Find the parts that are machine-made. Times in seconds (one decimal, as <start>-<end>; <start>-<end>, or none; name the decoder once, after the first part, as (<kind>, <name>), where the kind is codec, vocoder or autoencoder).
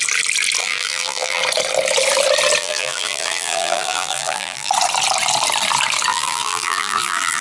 0.6-1.4 (vocoder, BigVGAN v2); 2.6-4.7; 6.1-7.4